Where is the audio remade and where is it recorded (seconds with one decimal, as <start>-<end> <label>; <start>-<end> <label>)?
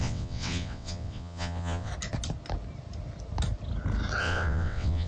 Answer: 0.0-1.9 remade; 1.9-4.2 recorded; 4.2-5.1 remade